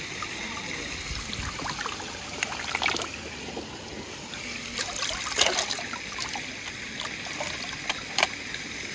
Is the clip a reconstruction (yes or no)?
no